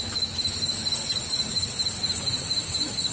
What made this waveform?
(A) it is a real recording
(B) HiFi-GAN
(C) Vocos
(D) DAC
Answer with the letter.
A